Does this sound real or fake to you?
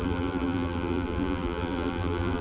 fake